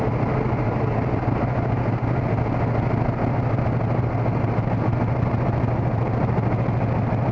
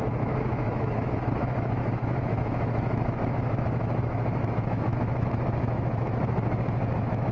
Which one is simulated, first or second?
second